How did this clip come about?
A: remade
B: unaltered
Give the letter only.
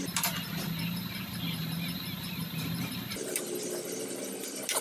B